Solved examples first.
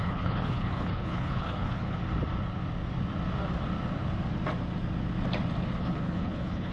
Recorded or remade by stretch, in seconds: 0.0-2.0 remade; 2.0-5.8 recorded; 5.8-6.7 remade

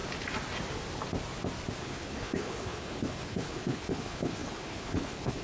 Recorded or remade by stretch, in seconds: 0.0-1.8 recorded; 1.8-5.4 remade

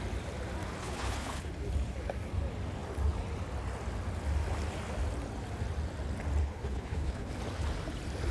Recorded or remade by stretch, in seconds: 0.0-0.8 recorded; 0.8-1.5 remade; 1.5-6.4 recorded; 6.4-7.3 remade; 7.3-8.3 recorded

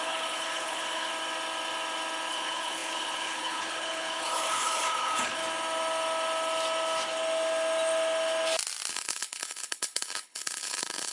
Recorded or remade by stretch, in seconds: 0.0-1.1 remade; 1.1-2.3 recorded; 2.3-5.4 remade; 5.4-8.9 recorded; 8.9-11.1 remade

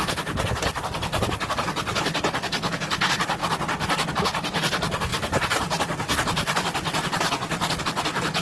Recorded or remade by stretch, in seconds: 0.0-8.4 recorded

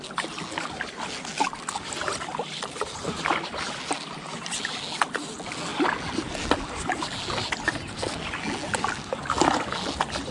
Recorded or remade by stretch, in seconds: 0.0-10.3 recorded

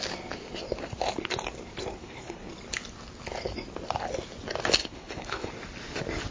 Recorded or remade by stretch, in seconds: 0.0-2.0 recorded; 2.0-2.5 remade; 2.5-4.8 recorded; 4.8-5.5 remade; 5.5-6.3 recorded

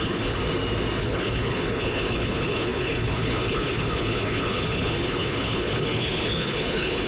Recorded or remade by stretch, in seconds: 0.0-0.4 remade; 0.4-1.0 recorded; 1.0-7.1 remade